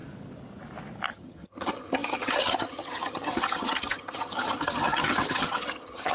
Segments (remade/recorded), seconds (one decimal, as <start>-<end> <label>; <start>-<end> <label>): 0.0-1.1 recorded; 1.1-6.1 remade